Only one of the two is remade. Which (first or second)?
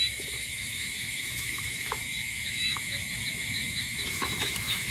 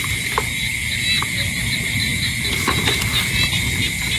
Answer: first